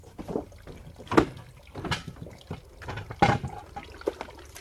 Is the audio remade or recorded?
recorded